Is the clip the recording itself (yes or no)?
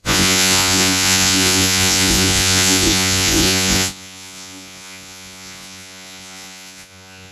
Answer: no